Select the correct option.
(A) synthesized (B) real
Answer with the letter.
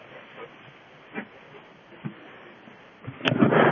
B